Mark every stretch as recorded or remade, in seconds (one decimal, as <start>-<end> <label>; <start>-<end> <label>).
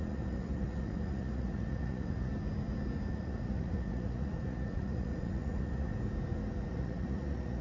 0.0-2.3 remade; 2.3-3.1 recorded; 3.1-5.9 remade; 5.9-6.7 recorded; 6.7-7.6 remade